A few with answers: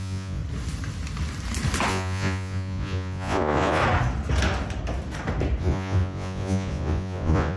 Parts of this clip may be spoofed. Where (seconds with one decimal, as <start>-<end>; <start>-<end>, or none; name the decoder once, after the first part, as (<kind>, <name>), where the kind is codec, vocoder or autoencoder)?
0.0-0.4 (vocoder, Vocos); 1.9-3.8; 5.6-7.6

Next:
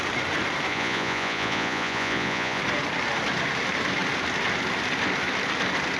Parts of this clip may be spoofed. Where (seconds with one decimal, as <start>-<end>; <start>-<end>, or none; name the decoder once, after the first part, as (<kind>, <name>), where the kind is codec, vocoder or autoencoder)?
0.7-2.6 (vocoder, Vocos)

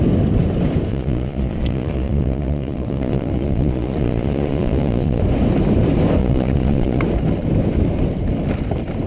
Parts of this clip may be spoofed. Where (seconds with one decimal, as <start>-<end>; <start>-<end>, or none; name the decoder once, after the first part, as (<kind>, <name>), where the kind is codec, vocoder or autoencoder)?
0.9-5.2 (vocoder, Vocos); 6.2-7.0

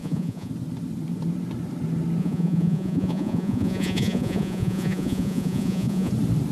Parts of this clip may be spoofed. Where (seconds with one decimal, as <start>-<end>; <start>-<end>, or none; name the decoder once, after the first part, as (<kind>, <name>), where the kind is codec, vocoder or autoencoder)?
0.0-0.5 (vocoder, Vocos); 2.2-6.1

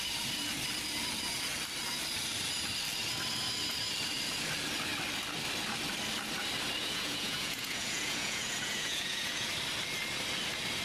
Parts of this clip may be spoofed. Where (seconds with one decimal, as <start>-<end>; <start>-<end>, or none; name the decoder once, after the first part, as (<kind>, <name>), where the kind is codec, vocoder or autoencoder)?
6.8-9.5 (vocoder, Vocos)

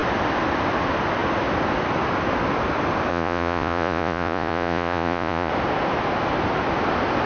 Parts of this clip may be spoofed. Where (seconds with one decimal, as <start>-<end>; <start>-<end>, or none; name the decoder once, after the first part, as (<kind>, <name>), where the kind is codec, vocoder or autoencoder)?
3.1-5.5 (vocoder, Vocos)

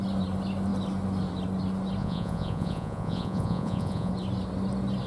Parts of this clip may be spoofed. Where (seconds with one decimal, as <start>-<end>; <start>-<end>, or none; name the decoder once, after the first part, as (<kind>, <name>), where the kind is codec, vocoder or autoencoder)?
2.0-4.1 (vocoder, Vocos)

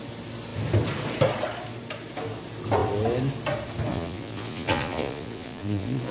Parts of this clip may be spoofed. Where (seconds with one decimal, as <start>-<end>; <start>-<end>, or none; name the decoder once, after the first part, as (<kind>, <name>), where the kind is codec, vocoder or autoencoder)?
3.9-6.1 (vocoder, Vocos)